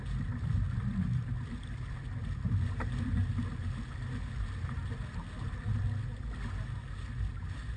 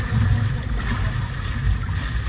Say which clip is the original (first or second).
first